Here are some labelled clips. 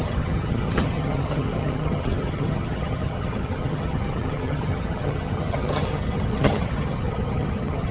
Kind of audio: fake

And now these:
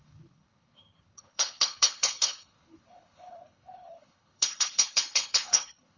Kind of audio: fake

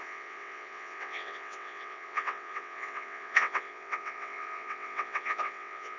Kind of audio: fake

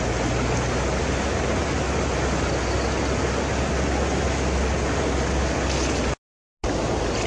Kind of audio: real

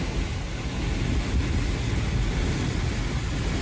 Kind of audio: real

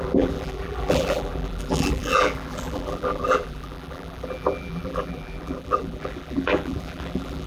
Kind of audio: fake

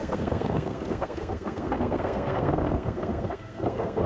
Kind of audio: fake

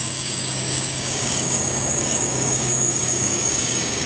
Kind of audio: fake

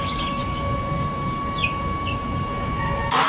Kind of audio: real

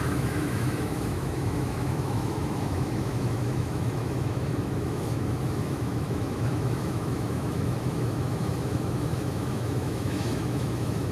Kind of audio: fake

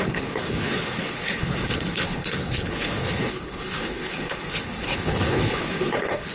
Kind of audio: fake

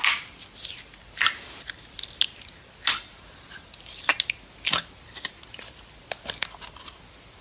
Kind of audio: real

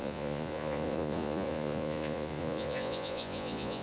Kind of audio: fake